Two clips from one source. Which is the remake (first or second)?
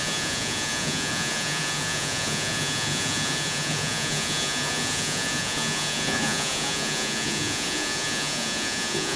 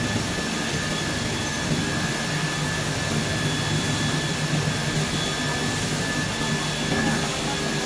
first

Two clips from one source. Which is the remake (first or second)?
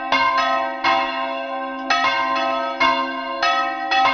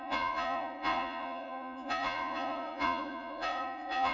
second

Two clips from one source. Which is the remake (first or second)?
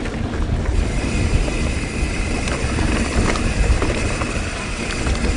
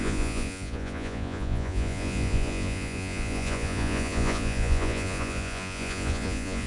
second